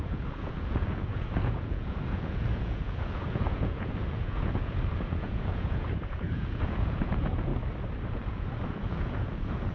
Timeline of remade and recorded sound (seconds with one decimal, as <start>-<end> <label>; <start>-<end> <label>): 0.0-7.5 remade; 7.5-8.1 recorded; 8.1-9.7 remade